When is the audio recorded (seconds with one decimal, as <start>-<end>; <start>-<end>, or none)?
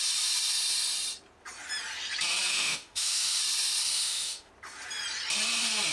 0.0-2.5; 3.4-3.8; 4.5-5.9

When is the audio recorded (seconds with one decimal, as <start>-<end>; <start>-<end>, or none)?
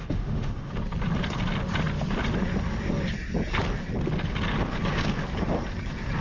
0.7-6.2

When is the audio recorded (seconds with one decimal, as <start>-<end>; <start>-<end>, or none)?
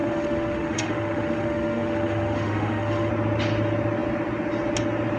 3.1-5.2